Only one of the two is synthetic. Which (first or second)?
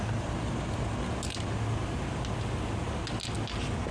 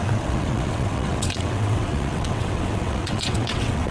second